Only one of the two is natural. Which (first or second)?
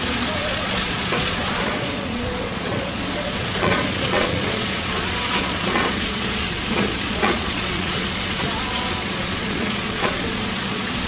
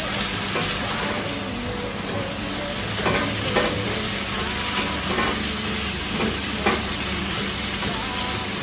second